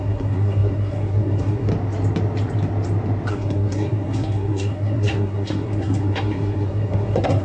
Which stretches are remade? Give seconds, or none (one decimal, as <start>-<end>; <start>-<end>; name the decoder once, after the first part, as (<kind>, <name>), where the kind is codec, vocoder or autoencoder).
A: 0.0-1.7 (codec, SNAC); 3.3-7.4